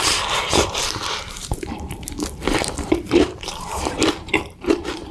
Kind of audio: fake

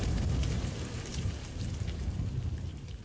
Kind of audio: fake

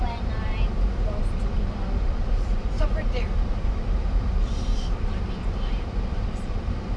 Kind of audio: fake